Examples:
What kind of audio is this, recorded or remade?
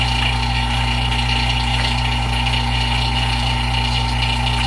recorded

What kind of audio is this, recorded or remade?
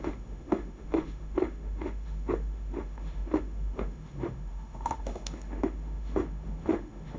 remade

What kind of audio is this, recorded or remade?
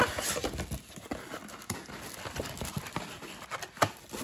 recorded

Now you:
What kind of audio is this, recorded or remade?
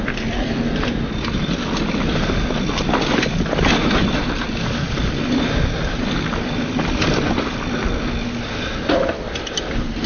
recorded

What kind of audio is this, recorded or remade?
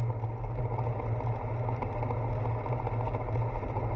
recorded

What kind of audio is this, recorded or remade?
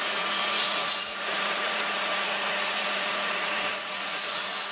remade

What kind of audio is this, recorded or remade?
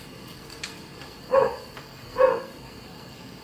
remade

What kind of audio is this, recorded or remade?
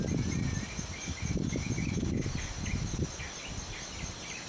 recorded